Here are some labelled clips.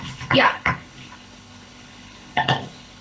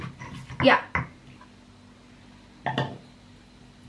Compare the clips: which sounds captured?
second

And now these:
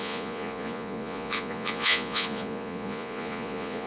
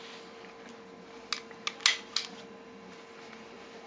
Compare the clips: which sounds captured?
second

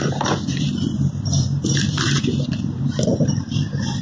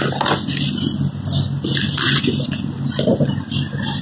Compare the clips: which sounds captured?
second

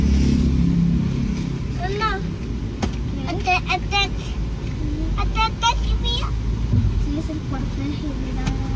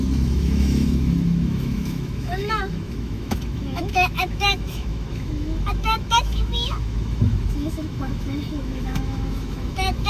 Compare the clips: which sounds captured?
first